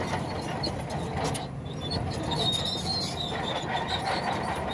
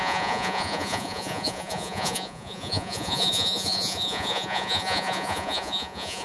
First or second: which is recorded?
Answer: first